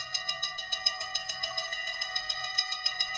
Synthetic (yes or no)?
yes